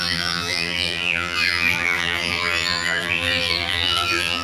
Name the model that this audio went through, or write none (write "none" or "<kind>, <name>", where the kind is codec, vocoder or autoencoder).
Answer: vocoder, BigVGAN v2